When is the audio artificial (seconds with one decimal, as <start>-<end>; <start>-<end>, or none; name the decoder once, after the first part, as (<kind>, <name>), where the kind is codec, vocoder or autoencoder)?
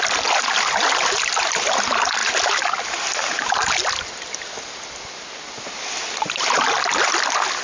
none